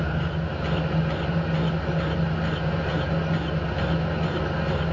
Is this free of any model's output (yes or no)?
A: yes